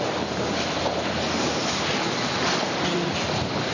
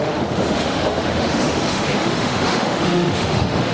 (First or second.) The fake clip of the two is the second